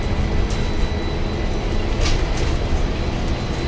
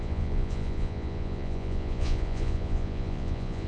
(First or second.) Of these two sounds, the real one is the first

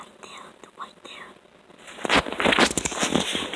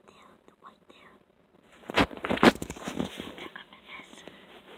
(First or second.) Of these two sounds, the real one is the first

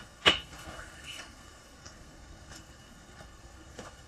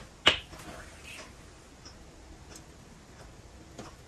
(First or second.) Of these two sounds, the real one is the second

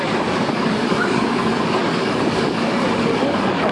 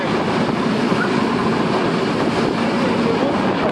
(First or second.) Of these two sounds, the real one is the second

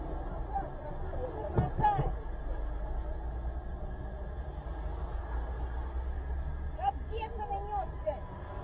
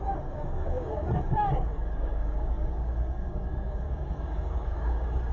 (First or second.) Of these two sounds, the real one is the first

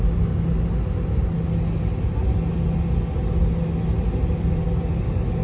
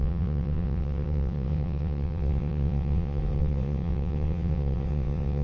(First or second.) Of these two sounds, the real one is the first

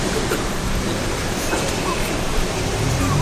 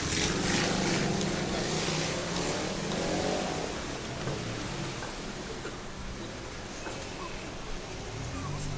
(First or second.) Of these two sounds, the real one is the second